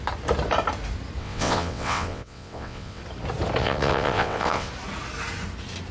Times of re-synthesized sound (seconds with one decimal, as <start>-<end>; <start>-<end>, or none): 1.2-3.0; 3.6-4.7

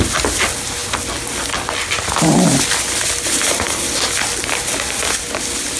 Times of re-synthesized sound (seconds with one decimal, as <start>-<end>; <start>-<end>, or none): none

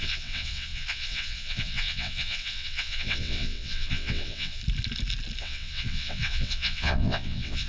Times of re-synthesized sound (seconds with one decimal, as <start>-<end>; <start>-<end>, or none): 0.0-4.6; 5.4-7.7

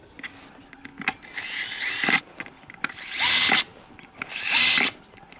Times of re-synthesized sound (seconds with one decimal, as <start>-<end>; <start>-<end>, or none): none

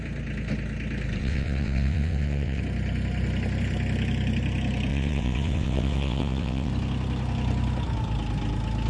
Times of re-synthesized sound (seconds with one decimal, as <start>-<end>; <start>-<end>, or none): 1.2-2.6; 4.9-6.7

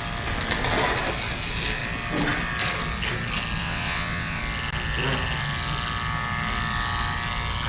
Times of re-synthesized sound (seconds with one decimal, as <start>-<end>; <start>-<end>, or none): 3.6-4.4

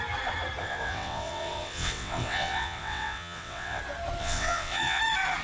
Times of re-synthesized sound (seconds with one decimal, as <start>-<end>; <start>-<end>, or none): 0.6-3.8; 4.2-5.0